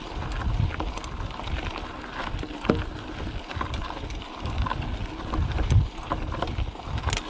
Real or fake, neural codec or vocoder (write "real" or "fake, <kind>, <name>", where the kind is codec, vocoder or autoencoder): real